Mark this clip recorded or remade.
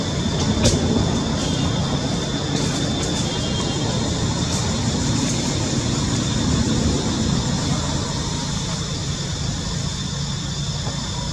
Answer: recorded